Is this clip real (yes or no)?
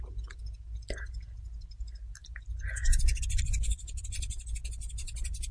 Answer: yes